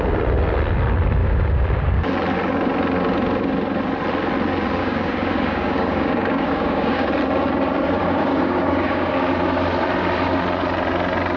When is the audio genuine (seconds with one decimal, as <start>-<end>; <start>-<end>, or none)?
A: 0.0-1.2; 2.1-4.8; 7.1-8.0; 9.1-11.4